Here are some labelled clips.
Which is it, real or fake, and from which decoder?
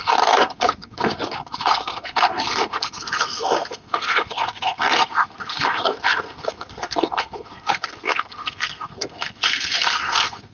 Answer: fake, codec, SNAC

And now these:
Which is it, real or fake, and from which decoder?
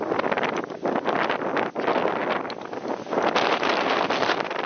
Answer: real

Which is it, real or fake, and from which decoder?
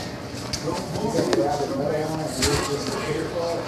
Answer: real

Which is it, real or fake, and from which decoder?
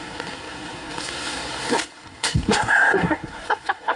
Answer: fake, codec, SNAC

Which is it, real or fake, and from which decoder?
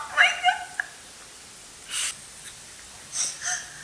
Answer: real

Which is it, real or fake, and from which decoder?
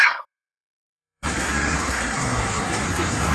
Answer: fake, codec, SNAC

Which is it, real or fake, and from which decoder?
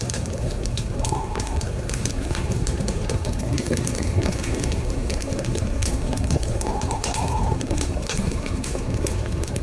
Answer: fake, codec, SNAC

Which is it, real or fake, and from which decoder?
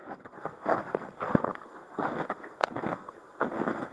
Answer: fake, codec, SNAC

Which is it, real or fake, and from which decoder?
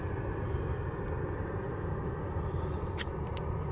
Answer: real